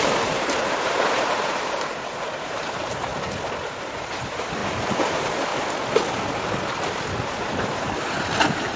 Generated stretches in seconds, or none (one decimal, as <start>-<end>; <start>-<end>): 0.0-3.1; 3.7-5.5; 7.1-8.8